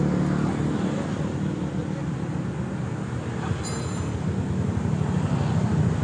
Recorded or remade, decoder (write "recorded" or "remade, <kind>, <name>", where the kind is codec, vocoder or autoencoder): recorded